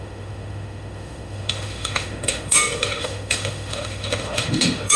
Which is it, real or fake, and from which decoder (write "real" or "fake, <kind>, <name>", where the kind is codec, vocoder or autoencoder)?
fake, autoencoder, DAC-VAE